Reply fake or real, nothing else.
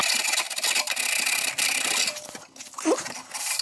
real